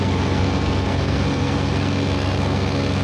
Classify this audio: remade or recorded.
remade